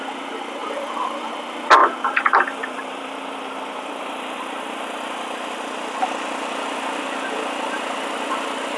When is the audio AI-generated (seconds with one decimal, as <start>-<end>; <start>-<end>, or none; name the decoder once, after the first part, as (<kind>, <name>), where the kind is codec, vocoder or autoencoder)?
0.6-1.3 (vocoder, BigVGAN v2); 1.8-6.0